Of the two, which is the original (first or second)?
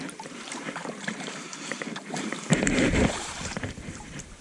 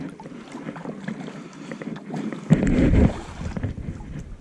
second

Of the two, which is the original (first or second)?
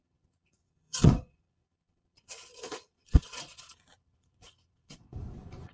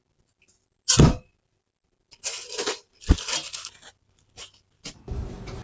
second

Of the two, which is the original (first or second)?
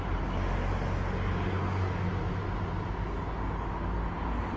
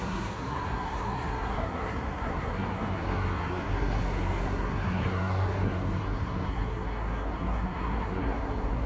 first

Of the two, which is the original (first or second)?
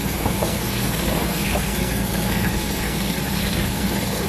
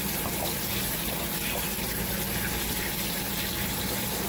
second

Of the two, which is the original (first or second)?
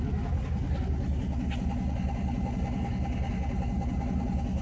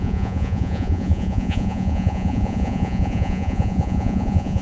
first